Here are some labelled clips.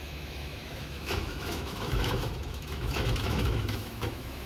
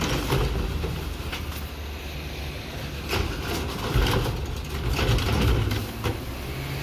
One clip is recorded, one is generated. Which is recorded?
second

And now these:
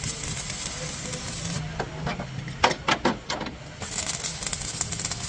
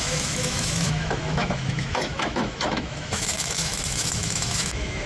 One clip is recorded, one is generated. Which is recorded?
first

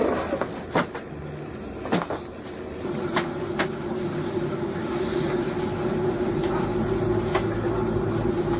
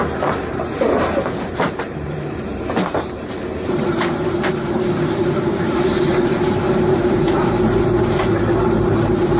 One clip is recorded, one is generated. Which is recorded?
first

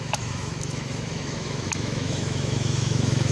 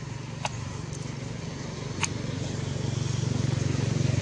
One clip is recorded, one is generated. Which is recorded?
second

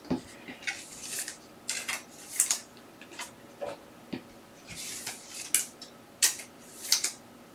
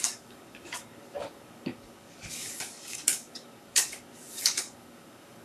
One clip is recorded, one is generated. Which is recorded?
first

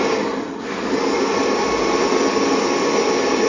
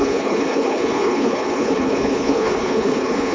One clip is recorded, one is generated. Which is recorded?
first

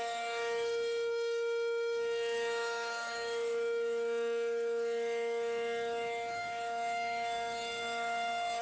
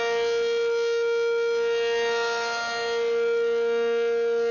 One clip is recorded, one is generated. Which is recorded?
second